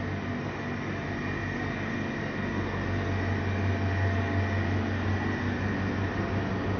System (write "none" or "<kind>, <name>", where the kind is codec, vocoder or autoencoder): none